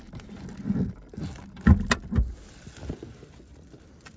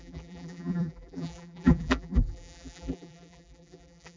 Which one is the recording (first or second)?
first